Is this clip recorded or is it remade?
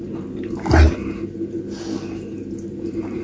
recorded